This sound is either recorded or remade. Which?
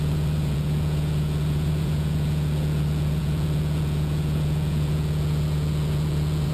remade